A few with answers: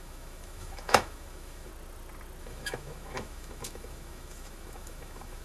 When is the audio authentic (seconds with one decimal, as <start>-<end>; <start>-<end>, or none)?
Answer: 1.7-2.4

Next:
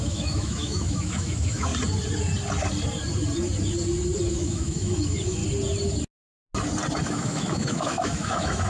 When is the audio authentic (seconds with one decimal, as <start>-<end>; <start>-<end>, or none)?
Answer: 1.7-4.3; 5.4-7.0

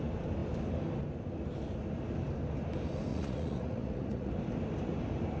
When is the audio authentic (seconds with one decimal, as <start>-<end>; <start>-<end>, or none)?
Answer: 0.0-3.1; 4.3-5.4